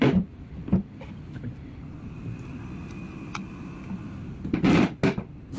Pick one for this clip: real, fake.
real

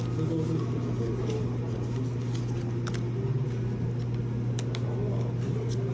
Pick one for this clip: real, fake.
real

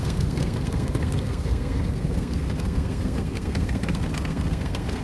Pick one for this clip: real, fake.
fake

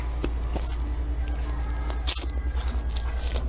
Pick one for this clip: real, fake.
real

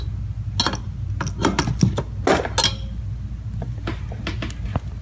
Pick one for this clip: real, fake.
real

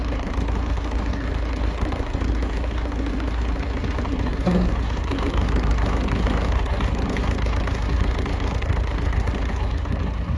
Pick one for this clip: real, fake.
fake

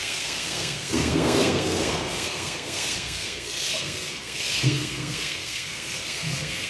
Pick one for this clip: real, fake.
fake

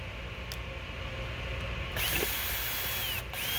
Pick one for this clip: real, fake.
real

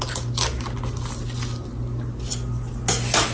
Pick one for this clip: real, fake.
real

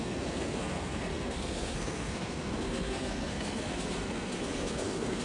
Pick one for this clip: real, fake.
fake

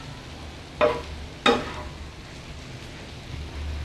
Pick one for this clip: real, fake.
real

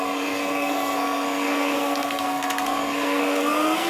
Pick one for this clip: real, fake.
fake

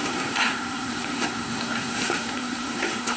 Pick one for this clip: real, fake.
fake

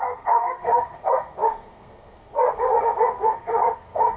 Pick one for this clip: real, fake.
fake